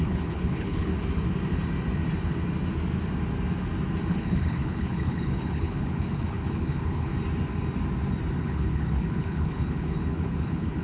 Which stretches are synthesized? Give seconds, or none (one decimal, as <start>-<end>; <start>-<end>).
0.0-0.9; 4.1-7.1; 8.4-10.8